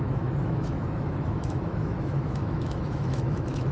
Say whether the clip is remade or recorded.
remade